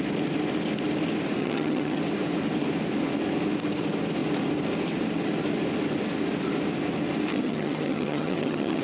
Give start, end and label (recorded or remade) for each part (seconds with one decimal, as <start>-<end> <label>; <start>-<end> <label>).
0.0-1.4 recorded; 1.4-2.0 remade; 2.0-7.3 recorded; 7.3-8.8 remade